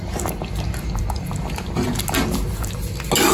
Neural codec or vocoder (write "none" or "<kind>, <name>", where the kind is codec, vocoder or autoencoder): none